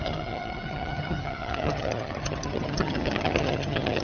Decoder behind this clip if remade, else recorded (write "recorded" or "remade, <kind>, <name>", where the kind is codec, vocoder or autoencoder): remade, vocoder, HiFi-GAN